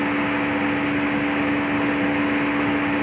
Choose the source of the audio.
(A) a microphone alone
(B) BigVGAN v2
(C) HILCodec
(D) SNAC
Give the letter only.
A